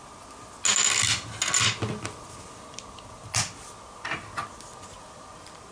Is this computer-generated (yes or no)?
no